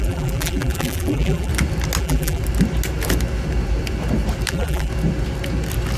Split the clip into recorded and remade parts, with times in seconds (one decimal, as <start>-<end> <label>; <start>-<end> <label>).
0.0-1.5 remade; 1.5-2.0 recorded; 2.0-2.4 remade; 2.4-4.5 recorded; 4.5-4.9 remade; 4.9-6.0 recorded